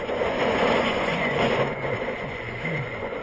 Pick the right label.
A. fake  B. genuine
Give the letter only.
A